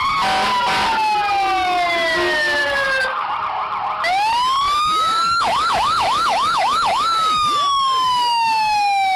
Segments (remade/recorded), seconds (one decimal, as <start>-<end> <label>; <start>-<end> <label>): 0.0-2.6 recorded; 2.6-3.3 remade; 3.3-5.0 recorded; 5.0-9.2 remade